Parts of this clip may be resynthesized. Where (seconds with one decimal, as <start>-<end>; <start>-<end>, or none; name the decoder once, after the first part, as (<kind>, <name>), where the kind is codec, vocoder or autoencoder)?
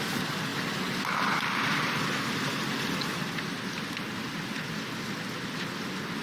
none